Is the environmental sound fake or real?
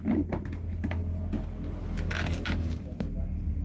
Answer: real